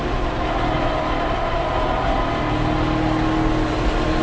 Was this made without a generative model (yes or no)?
yes